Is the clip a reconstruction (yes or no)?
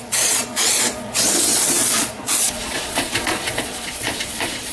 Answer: yes